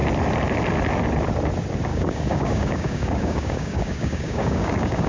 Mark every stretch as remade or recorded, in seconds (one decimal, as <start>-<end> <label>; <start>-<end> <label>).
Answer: 0.0-1.9 recorded; 1.9-5.1 remade